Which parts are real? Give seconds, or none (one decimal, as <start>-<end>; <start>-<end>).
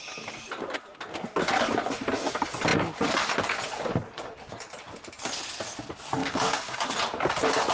0.0-6.2; 6.9-7.7